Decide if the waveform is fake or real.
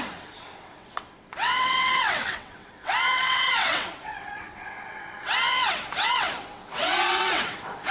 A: fake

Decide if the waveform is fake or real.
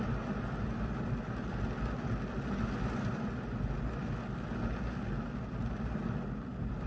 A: real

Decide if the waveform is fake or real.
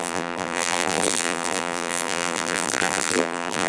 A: fake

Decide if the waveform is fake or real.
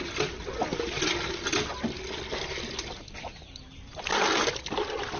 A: real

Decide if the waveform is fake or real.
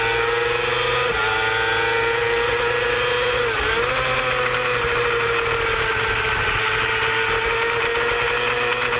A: real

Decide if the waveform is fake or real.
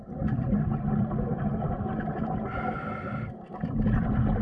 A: real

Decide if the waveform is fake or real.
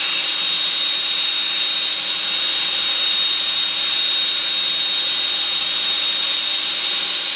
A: real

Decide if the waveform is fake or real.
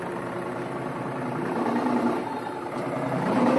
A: fake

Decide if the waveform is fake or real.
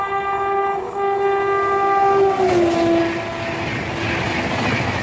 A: real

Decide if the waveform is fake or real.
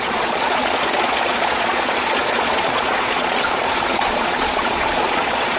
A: fake